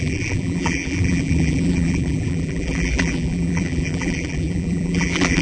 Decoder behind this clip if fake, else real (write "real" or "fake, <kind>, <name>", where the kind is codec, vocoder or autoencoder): fake, vocoder, BigVGAN v2